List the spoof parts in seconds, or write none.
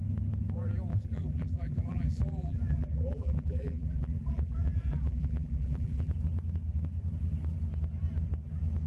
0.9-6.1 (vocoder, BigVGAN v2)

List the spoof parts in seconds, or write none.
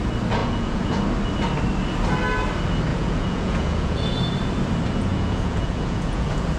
0.4-1.0 (vocoder, Vocos); 2.9-4.2; 5.1-6.6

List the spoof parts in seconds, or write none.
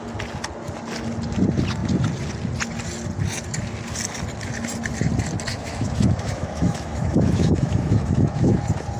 5.5-8.6 (autoencoder, DAC-VAE)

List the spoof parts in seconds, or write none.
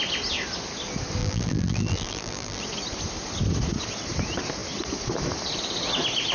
1.2-2.6 (vocoder, BigVGAN v2)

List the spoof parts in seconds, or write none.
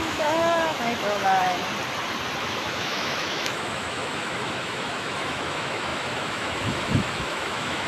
0.0-1.6 (autoencoder, DAC-VAE); 2.4-7.9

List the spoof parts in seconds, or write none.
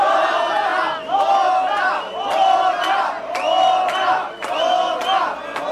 none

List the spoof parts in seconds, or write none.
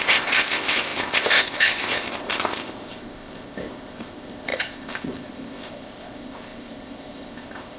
0.0-7.8 (codec, ZipCodec)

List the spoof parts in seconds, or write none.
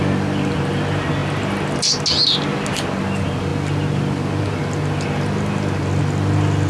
none